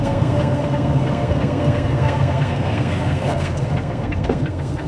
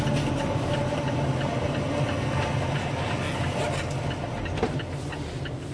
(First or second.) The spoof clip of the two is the first